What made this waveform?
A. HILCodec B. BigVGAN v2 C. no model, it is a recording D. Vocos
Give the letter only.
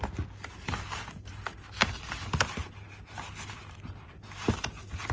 C